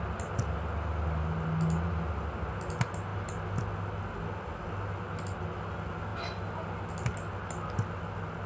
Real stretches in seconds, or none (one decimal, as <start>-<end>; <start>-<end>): 0.0-8.5